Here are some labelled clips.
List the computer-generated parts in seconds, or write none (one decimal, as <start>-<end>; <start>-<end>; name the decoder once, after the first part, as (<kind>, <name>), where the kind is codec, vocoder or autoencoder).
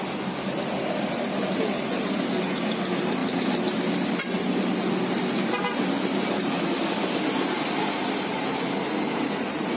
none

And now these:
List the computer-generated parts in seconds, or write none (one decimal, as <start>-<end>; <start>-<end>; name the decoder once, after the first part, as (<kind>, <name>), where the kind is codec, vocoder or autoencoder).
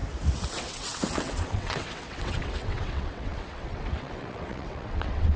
0.5-5.4 (vocoder, WaveNeXt)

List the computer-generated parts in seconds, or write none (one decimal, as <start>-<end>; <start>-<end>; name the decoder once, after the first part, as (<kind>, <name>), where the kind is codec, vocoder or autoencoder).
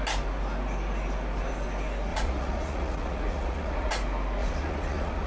2.1-3.9 (vocoder, Vocos); 4.4-5.3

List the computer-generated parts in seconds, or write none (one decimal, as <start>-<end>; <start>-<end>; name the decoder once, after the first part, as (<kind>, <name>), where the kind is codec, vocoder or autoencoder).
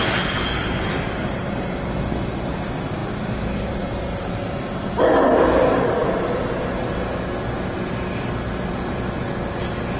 0.0-3.0 (vocoder, BigVGAN v2); 3.6-6.0; 7.9-10.0